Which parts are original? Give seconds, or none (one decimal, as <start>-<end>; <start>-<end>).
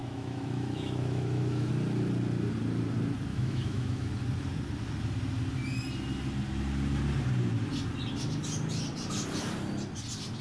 1.7-3.3; 4.1-10.4